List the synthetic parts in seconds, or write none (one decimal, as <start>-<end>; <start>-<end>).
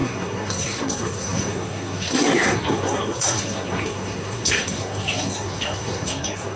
0.0-6.6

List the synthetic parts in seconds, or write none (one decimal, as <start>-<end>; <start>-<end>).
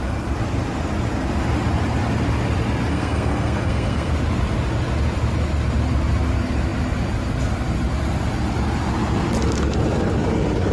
2.9-4.1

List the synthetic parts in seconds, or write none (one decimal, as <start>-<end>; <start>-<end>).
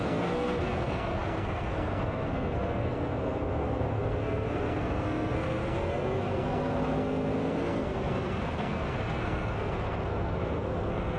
0.0-11.2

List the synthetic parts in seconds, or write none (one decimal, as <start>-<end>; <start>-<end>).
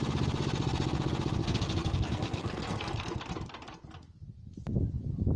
1.4-3.2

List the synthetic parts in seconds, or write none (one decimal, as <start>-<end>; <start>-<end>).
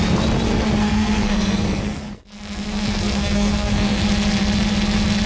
0.8-4.0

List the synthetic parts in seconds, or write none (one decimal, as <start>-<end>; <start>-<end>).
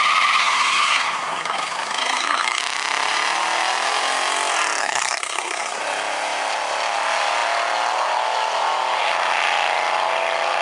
0.4-2.6; 4.8-5.8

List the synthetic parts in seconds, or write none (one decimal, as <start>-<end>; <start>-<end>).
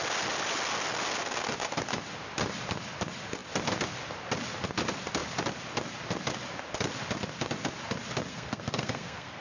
8.3-9.4